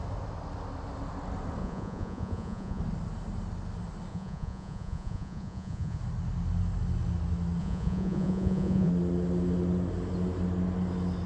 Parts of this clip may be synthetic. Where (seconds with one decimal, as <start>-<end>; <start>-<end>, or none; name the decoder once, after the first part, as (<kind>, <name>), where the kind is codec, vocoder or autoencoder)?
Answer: 1.6-2.8 (vocoder, Vocos); 4.1-6.0; 7.6-8.9